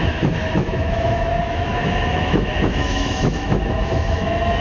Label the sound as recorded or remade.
remade